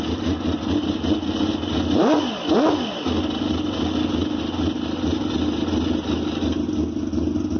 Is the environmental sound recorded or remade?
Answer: recorded